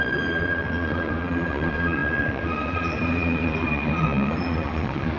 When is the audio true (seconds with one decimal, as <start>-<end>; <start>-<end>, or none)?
none